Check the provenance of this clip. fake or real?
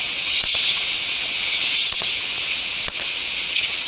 fake